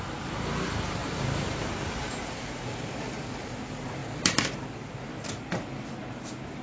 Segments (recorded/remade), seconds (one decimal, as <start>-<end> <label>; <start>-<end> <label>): 0.0-1.0 recorded; 1.0-3.6 remade; 3.6-4.0 recorded; 4.0-5.0 remade; 5.0-6.6 recorded